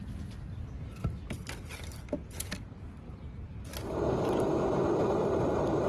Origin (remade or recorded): recorded